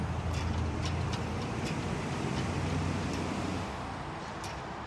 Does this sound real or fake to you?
fake